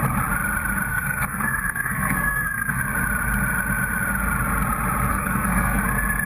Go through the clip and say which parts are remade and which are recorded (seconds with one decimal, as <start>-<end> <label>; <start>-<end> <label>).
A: 0.0-0.9 recorded; 0.9-2.8 remade; 2.8-5.1 recorded; 5.1-5.8 remade; 5.8-6.3 recorded